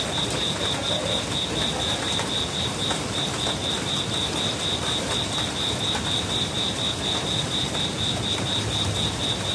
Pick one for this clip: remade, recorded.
recorded